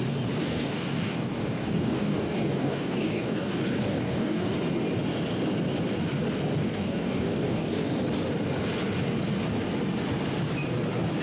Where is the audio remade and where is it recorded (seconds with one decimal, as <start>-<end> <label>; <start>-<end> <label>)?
0.0-0.4 recorded; 0.4-4.5 remade; 4.5-6.7 recorded; 6.7-7.9 remade; 7.9-11.2 recorded